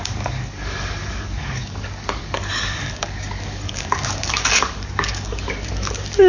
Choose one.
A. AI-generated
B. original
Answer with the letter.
A